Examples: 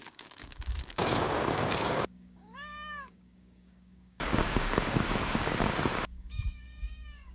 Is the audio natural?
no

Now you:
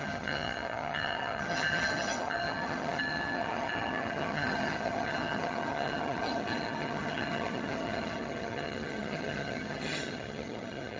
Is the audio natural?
no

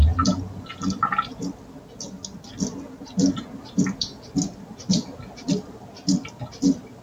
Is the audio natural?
yes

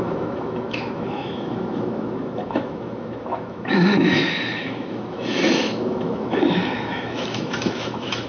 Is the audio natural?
no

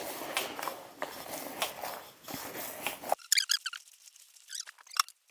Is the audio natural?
yes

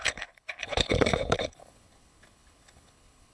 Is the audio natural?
no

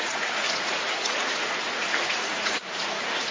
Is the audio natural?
no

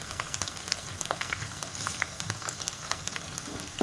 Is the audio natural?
no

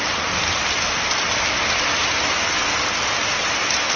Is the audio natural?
yes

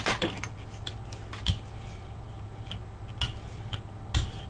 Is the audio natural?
yes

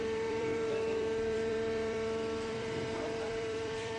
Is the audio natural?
no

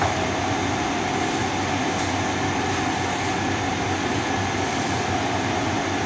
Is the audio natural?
yes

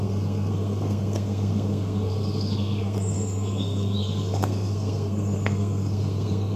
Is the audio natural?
no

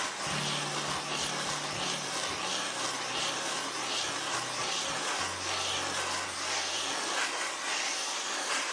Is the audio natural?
yes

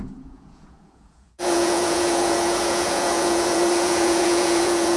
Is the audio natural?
no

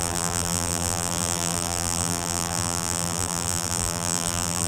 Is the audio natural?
no